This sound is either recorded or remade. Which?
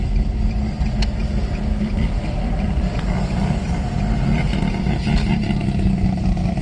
recorded